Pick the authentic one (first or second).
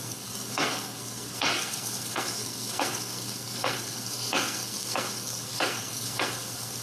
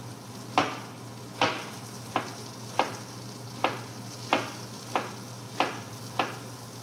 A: second